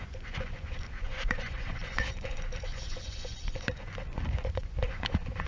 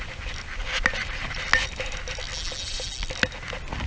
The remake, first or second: first